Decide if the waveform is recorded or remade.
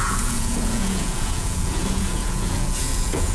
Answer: remade